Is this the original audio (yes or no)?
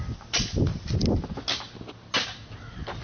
yes